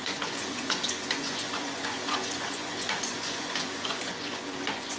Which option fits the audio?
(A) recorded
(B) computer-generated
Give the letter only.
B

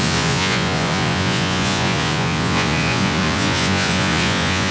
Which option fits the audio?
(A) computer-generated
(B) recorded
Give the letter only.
A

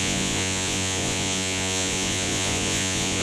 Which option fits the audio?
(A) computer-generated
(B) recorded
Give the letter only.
A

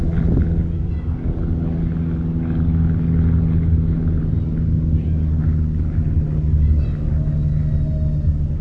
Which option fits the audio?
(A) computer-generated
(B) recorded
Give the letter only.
B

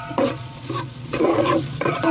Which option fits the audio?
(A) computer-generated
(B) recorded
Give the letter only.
A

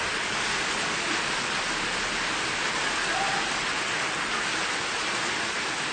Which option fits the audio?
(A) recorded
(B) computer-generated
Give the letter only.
A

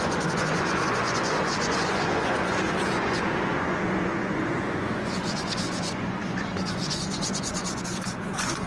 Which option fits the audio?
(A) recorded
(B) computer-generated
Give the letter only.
B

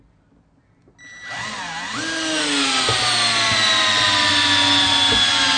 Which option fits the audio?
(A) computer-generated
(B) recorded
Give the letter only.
B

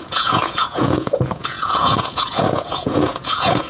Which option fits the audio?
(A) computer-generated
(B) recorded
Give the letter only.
A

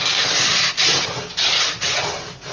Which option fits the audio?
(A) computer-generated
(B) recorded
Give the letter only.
B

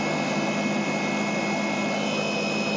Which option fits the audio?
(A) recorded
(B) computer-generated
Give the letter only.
A